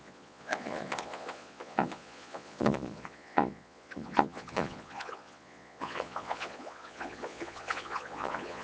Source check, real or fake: fake